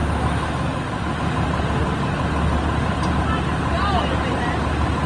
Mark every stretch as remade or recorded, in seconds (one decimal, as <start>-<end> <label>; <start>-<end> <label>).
0.0-5.1 recorded